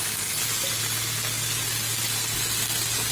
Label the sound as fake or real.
real